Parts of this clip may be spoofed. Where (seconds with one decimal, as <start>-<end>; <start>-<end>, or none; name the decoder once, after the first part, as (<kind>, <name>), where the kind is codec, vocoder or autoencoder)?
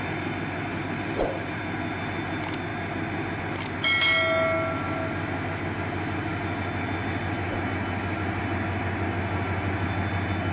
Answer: 0.7-1.6 (vocoder, BigVGAN v2)